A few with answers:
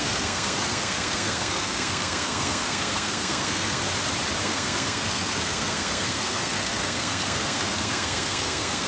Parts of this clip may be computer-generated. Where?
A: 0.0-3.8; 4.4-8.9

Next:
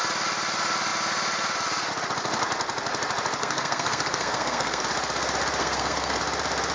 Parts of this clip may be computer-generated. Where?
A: 3.4-4.8; 5.6-6.2

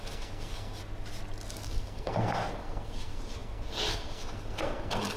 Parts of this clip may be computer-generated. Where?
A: 0.0-0.8; 1.5-5.2

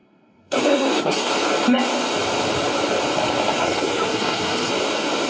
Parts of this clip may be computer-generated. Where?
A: 0.0-1.3; 3.6-4.7

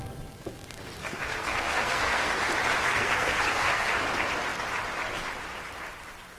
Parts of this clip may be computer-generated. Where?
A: 1.0-2.3; 2.8-4.0

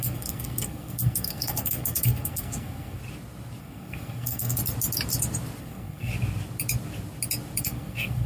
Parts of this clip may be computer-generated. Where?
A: 0.0-3.0; 3.6-4.6; 5.6-6.1; 7.6-8.3

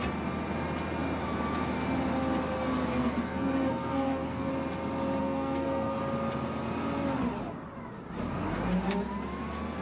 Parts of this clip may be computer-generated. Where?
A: 2.9-4.5; 5.2-6.0